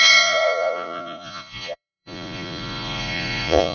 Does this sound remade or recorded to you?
remade